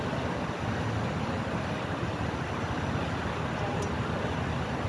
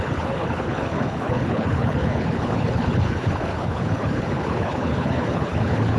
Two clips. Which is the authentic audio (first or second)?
first